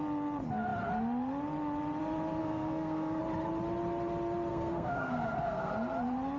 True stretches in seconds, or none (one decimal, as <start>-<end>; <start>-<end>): 0.0-2.4; 3.2-4.5; 5.7-6.4